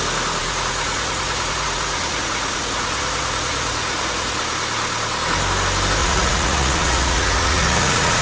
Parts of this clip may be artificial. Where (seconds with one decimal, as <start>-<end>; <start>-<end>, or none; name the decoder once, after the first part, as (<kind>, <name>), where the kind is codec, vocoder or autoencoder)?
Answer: 0.4-4.4 (vocoder, Vocos); 6.0-8.2